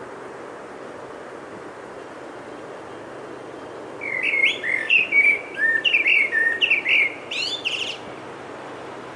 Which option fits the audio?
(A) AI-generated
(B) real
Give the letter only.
A